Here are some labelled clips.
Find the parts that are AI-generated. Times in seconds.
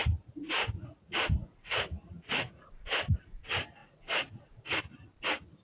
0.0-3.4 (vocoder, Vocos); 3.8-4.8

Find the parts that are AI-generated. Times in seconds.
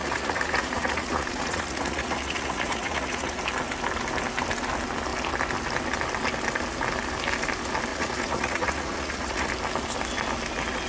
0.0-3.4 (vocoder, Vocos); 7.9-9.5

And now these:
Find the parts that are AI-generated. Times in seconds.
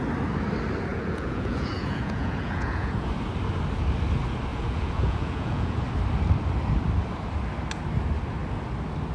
0.9-3.1 (vocoder, Vocos); 4.5-5.8